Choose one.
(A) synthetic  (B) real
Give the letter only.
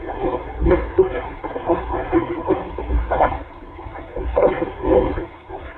A